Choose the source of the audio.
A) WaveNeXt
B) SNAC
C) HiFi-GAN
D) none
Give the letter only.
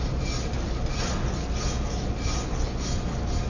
D